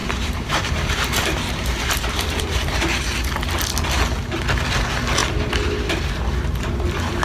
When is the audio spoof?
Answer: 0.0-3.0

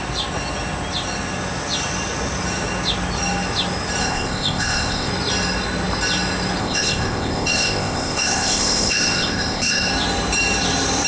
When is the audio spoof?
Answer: 4.0-5.1; 6.6-9.9

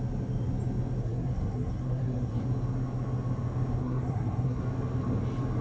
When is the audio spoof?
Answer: 1.0-2.4; 3.8-4.6

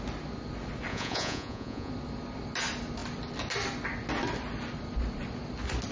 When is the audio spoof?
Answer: 0.9-1.9